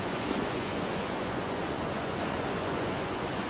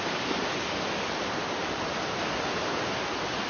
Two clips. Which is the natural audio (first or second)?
second